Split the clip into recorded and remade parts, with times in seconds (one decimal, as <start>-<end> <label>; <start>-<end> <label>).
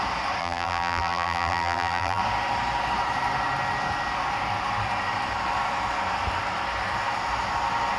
0.0-0.4 recorded; 0.4-2.2 remade; 2.2-8.0 recorded